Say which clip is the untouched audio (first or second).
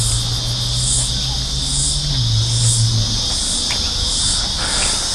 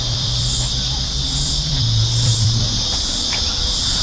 first